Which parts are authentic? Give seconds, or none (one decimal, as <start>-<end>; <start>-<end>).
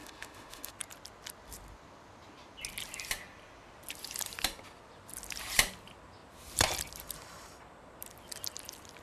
0.7-9.0